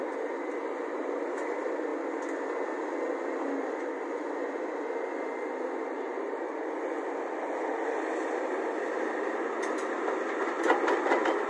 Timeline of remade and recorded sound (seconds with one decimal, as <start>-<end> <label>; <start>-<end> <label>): 0.0-11.5 recorded